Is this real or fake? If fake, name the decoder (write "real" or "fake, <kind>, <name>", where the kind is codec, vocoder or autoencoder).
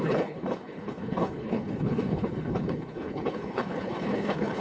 fake, codec, HILCodec